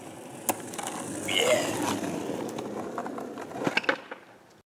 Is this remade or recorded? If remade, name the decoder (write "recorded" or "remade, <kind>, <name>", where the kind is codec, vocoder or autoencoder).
recorded